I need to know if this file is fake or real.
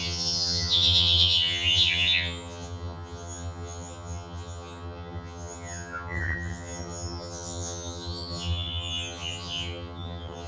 fake